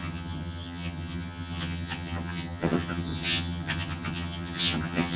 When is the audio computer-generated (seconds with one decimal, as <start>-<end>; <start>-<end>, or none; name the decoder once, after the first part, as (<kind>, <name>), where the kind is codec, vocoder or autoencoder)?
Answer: 0.0-5.2 (vocoder, HiFi-GAN)